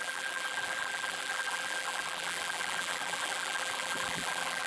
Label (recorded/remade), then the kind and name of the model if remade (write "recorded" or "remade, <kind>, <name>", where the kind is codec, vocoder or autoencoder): remade, vocoder, BigVGAN v2